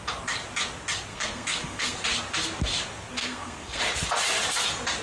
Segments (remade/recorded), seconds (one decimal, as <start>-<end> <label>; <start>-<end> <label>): 0.0-1.1 recorded; 1.1-2.0 remade; 2.0-3.2 recorded; 3.2-3.8 remade; 3.8-5.0 recorded